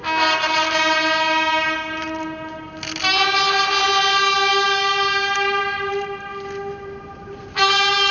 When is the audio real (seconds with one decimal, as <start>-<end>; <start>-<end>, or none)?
0.0-6.3; 7.5-8.1